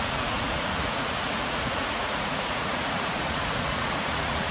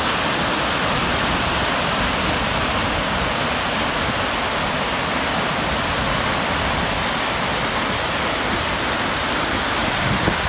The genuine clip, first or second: second